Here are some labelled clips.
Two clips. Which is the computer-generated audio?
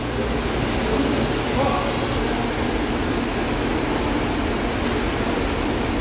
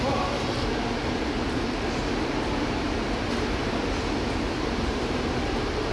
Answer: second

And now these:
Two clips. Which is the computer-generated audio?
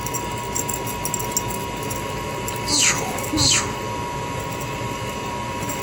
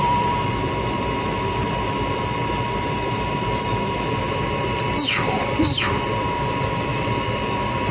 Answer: second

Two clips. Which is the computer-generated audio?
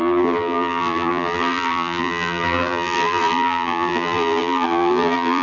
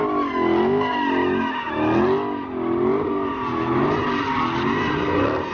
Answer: first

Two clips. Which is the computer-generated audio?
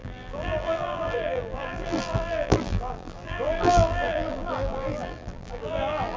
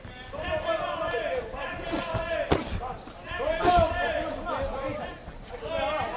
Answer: first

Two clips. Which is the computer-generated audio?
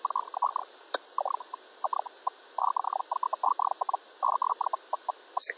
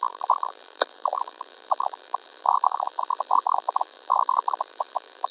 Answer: second